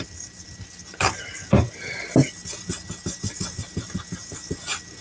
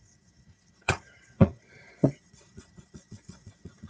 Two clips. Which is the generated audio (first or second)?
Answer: second